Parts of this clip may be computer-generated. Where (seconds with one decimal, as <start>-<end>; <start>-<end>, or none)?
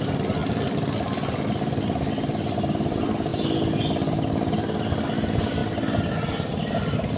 none